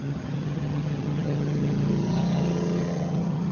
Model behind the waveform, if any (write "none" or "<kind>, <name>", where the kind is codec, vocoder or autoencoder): vocoder, HiFi-GAN